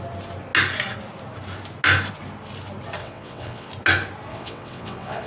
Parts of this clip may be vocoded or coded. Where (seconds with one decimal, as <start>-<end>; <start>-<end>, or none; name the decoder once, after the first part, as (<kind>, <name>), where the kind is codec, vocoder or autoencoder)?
3.0-3.7 (vocoder, WaveNeXt); 4.3-5.3